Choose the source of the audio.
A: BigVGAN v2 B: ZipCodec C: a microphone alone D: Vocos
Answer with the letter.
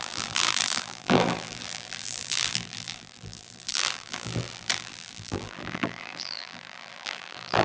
A